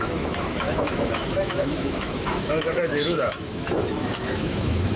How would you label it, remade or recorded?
remade